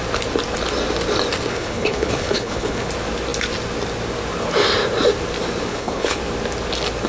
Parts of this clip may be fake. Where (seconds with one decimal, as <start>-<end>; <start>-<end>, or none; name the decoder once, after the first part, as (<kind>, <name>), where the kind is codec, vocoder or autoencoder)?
1.5-2.9 (codec, HILCodec); 5.7-6.2